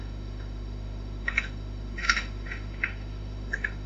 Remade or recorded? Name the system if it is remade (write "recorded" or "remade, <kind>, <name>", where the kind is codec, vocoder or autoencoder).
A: remade, autoencoder, DAC-VAE